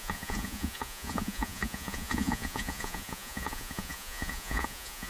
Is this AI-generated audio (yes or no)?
yes